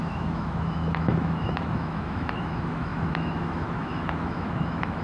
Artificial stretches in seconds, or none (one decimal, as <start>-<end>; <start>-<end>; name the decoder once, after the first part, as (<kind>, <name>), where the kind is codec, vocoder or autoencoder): 0.0-5.0 (autoencoder, DAC-VAE)